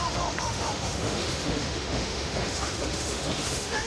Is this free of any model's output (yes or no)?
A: no